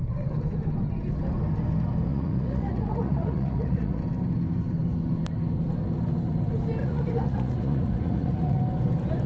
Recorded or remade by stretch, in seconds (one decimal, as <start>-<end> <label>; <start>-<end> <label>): 0.0-2.1 recorded; 2.1-4.0 remade; 4.0-6.8 recorded; 6.8-8.6 remade; 8.6-9.3 recorded